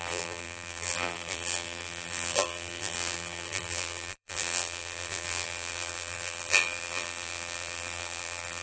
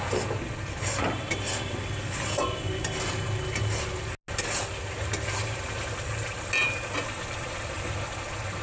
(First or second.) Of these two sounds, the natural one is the second